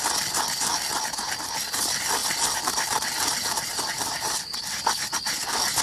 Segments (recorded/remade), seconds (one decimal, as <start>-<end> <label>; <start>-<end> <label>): 0.0-2.2 recorded; 2.2-5.8 remade